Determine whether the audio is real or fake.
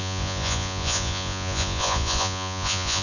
fake